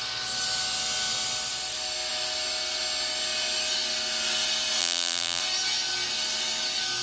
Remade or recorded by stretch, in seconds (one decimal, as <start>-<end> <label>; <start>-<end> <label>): 0.0-4.8 recorded; 4.8-5.4 remade; 5.4-7.0 recorded